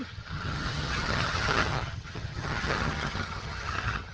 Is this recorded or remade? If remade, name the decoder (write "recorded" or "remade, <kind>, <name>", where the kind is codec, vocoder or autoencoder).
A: remade, vocoder, HiFi-GAN